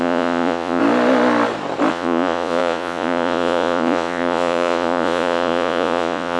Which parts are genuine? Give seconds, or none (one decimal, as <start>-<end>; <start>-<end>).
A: 0.8-1.9